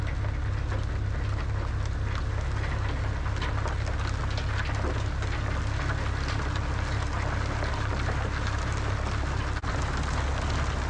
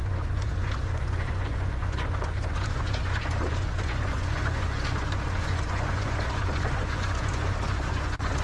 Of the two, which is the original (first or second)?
first